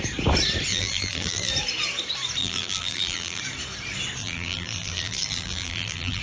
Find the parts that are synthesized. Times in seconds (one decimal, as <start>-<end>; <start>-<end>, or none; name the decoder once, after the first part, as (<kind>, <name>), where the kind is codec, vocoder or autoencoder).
0.7-1.5 (vocoder, BigVGAN v2); 2.4-3.4; 4.2-6.2